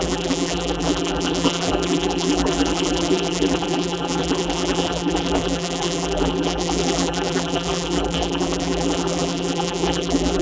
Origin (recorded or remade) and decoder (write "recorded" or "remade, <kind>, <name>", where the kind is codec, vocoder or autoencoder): remade, vocoder, BigVGAN v2